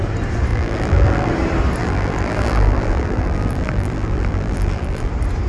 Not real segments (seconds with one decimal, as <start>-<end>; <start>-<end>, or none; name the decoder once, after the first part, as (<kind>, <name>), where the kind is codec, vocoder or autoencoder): 0.5-1.3 (vocoder, BigVGAN v2); 1.8-5.1